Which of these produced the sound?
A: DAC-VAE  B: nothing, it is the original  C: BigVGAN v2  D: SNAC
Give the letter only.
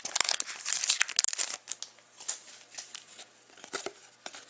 B